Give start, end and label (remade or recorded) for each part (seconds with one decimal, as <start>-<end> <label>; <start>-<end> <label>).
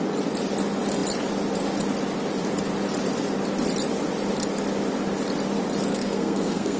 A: 0.0-5.9 recorded; 5.9-6.8 remade